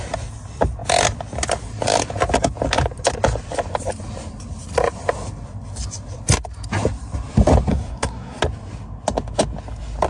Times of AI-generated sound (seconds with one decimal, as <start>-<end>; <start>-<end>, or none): 7.7-8.4